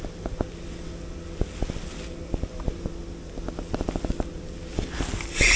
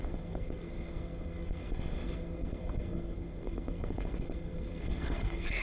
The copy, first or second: second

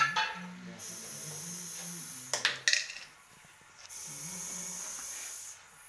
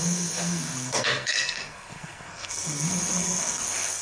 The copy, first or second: second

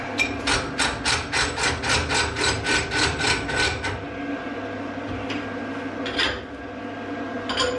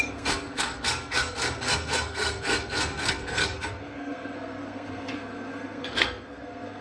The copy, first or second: second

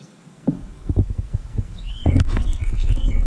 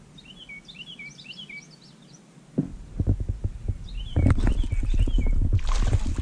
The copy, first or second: first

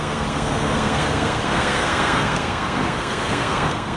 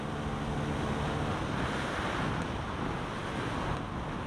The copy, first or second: first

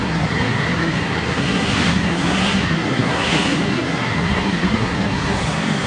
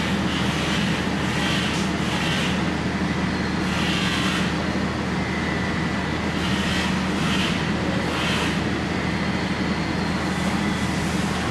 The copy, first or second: first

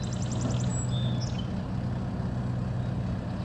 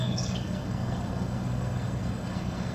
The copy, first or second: second